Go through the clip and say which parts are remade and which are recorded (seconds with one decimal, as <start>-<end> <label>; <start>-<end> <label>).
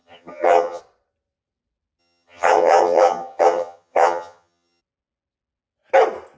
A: 0.0-0.8 remade; 0.8-2.0 recorded; 2.0-4.8 remade; 4.8-6.4 recorded